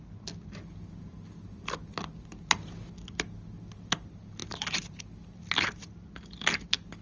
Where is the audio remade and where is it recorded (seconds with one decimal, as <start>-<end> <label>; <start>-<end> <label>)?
0.0-7.0 recorded